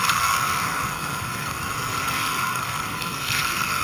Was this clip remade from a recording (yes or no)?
yes